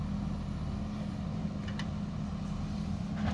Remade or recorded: recorded